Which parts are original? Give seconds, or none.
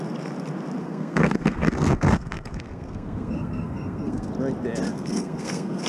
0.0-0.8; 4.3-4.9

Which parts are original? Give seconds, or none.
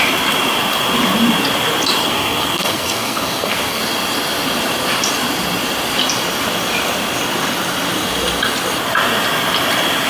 0.0-2.0; 3.8-10.1